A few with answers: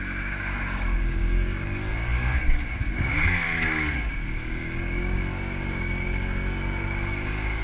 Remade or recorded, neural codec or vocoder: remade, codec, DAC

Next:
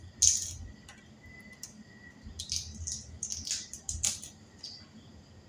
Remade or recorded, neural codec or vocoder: recorded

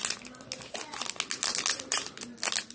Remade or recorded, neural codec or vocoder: recorded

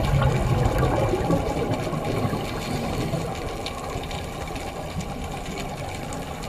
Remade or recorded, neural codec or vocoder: recorded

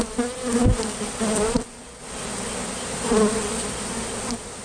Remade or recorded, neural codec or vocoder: recorded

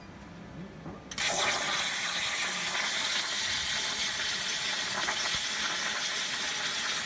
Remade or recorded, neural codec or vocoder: recorded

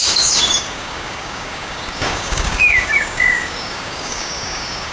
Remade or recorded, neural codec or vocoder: remade, codec, DAC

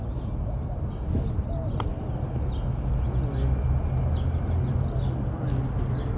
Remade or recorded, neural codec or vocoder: recorded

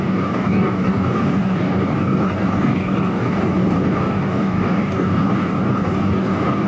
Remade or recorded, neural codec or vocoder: remade, codec, DAC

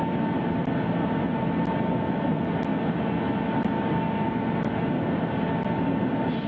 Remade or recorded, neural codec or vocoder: recorded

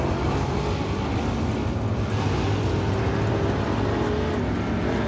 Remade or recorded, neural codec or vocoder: recorded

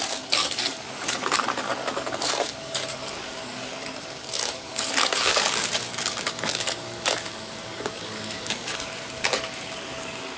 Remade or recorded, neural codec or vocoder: remade, codec, DAC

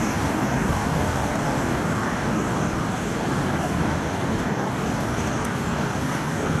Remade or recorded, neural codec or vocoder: remade, codec, DAC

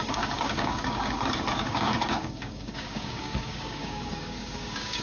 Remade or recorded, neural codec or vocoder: remade, codec, DAC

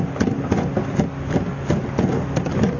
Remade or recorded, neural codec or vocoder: recorded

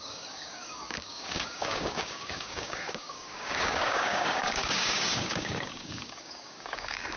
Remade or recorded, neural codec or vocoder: remade, codec, DAC